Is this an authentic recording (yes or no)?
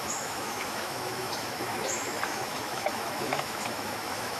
no